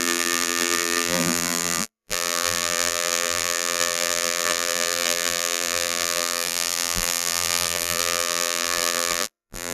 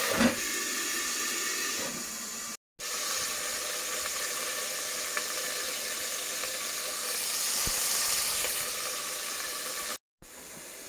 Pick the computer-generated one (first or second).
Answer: first